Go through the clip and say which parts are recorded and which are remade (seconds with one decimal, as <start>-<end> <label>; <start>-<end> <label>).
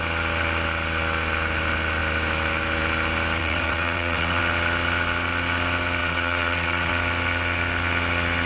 0.0-3.4 recorded; 3.4-4.4 remade; 4.4-6.0 recorded; 6.0-6.9 remade; 6.9-8.5 recorded